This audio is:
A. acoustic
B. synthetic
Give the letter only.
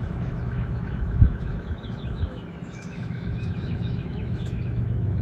B